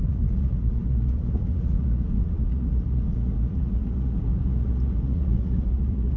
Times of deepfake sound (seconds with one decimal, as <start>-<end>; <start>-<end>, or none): 0.0-6.2